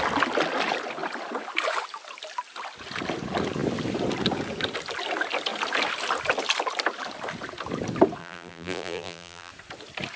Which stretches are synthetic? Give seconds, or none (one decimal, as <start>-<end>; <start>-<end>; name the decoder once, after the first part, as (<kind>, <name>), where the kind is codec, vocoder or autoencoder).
8.2-9.5 (vocoder, BigVGAN v2)